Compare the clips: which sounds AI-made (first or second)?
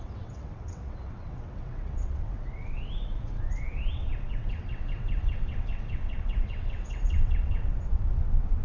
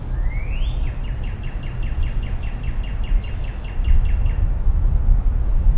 first